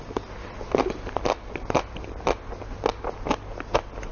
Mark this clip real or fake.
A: real